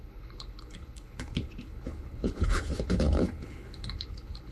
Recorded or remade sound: remade